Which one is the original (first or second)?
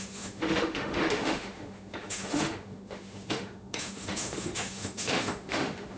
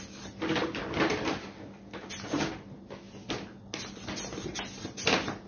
second